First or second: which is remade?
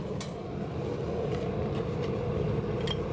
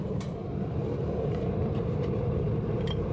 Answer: second